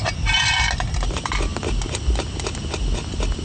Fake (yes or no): no